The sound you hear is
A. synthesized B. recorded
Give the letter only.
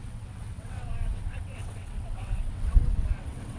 A